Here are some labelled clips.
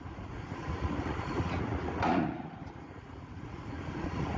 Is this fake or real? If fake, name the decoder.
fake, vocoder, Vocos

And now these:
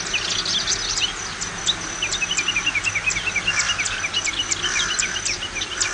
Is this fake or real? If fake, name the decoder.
real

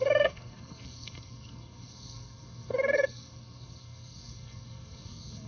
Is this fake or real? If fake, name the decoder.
fake, codec, SNAC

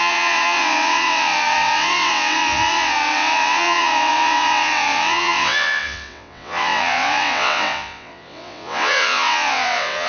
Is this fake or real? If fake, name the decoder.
fake, vocoder, WaveNeXt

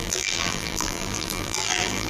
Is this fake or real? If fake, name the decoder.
fake, vocoder, BigVGAN v2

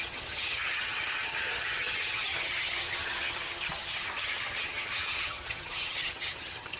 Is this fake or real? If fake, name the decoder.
fake, vocoder, HiFi-GAN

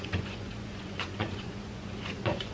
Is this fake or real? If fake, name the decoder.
fake, vocoder, Vocos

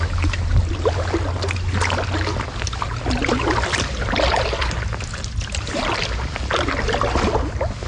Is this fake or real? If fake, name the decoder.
real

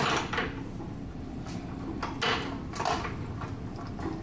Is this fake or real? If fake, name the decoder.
real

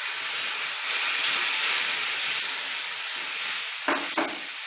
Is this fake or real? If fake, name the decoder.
fake, vocoder, BigVGAN v2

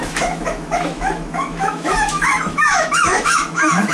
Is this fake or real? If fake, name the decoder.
fake, autoencoder, DAC-VAE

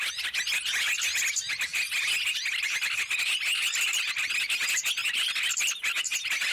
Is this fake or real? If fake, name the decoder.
real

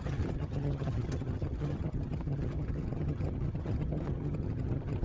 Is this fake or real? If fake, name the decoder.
fake, vocoder, HiFi-GAN